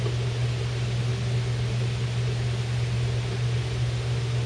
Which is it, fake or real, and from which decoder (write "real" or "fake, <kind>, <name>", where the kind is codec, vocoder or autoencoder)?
real